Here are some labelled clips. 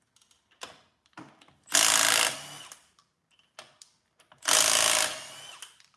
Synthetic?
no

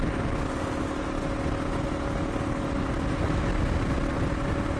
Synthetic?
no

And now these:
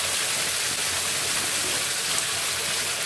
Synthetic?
no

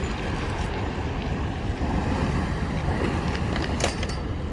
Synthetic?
no